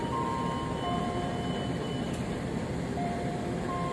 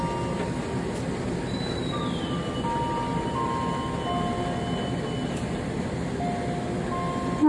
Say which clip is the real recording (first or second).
second